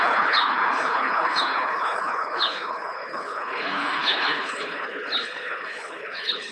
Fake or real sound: fake